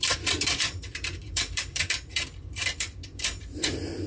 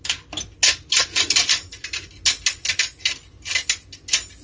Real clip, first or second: second